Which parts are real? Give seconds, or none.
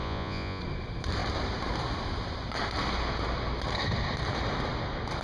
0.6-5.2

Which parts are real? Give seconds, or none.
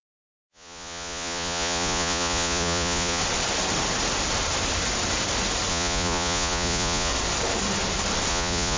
3.2-5.7; 7.1-8.3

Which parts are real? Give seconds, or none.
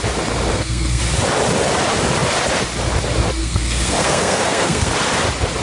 0.0-0.5; 1.0-3.4; 4.9-5.6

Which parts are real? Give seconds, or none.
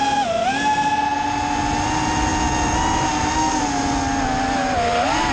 0.0-5.3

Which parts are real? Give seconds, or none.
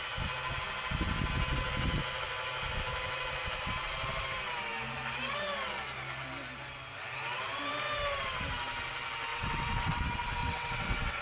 0.0-9.3; 10.0-10.4